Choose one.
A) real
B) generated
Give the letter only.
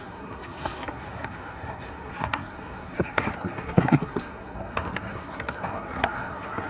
B